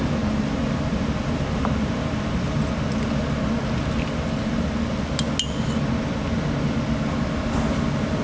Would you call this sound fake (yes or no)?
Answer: no